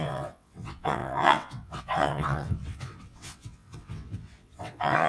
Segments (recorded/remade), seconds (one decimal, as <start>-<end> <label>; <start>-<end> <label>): 0.0-5.1 remade